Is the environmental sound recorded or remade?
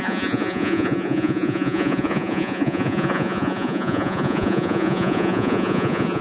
remade